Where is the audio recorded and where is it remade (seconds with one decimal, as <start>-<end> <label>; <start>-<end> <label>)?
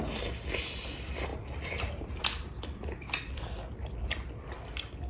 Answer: 0.0-5.1 recorded